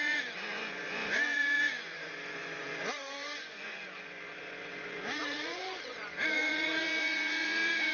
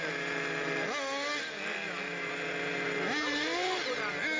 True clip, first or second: second